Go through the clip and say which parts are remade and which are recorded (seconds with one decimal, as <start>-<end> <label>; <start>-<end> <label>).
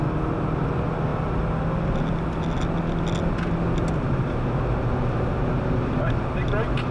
0.0-6.9 recorded